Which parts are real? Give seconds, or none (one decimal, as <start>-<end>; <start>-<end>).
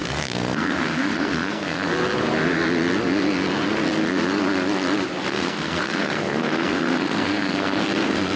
1.9-5.3